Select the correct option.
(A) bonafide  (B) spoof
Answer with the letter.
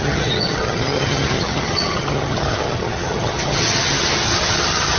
B